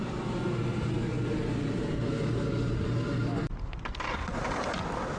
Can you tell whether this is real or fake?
real